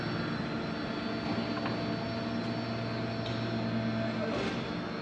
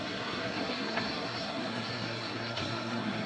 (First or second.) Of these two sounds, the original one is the first